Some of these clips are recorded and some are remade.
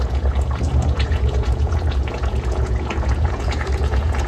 remade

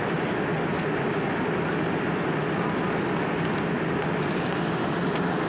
recorded